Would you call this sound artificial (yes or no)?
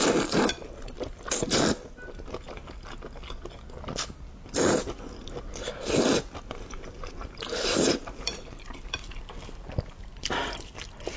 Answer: no